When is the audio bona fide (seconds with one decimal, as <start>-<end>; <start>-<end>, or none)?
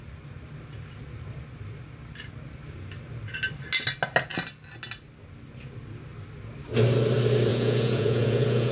0.0-7.5